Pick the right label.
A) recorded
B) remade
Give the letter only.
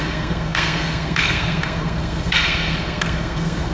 B